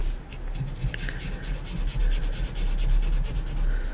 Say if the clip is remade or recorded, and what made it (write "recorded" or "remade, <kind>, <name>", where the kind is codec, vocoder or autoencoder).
recorded